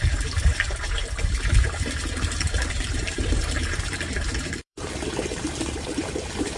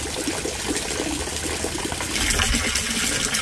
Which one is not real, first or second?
first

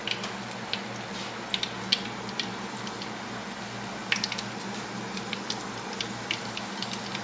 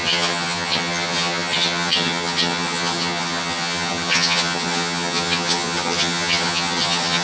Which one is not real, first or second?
second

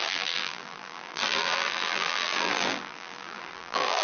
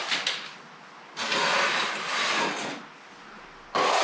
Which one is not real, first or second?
first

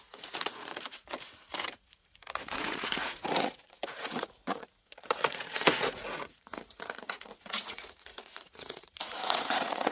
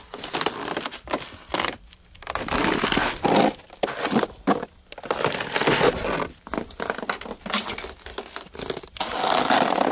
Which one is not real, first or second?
first